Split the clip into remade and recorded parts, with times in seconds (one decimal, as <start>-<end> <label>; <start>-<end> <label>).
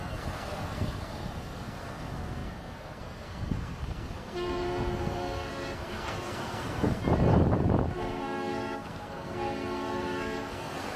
0.0-7.0 remade; 7.0-7.9 recorded; 7.9-11.0 remade